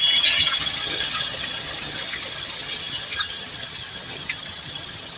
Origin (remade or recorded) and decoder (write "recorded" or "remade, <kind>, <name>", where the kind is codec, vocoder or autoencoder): remade, vocoder, HiFi-GAN